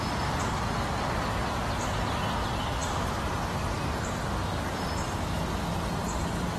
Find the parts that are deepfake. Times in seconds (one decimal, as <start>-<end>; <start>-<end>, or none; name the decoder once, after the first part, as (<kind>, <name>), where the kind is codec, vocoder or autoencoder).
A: none

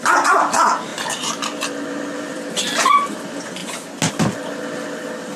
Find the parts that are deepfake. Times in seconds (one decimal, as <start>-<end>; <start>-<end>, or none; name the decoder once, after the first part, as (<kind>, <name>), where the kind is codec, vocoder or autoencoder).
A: 0.9-2.4 (vocoder, BigVGAN v2)